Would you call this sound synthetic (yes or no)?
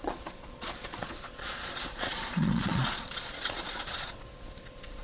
yes